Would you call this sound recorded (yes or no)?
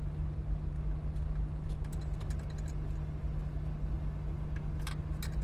yes